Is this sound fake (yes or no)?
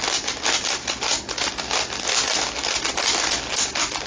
no